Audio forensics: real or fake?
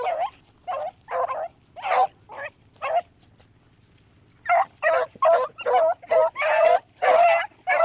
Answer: real